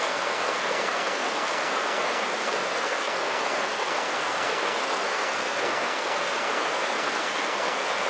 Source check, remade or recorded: remade